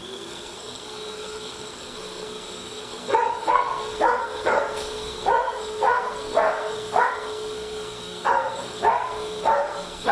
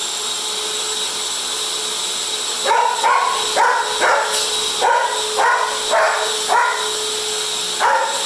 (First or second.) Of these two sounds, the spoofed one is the first